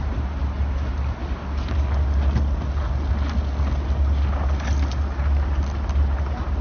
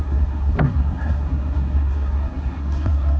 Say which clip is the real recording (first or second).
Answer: first